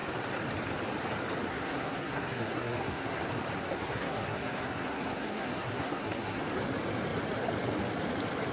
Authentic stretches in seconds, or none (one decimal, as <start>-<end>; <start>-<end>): 0.0-1.5; 3.2-3.6; 6.4-8.5